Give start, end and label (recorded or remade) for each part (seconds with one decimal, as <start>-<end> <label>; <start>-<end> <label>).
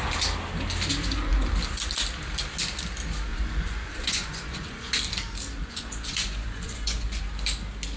0.0-3.3 recorded; 3.3-4.9 remade; 4.9-5.6 recorded; 5.6-7.2 remade; 7.2-8.0 recorded